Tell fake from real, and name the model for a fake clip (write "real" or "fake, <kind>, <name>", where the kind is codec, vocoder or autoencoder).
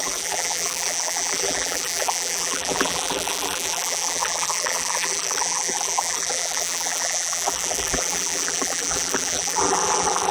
fake, vocoder, BigVGAN v2